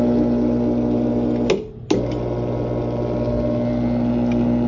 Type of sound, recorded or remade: recorded